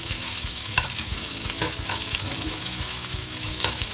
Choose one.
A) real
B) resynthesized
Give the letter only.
B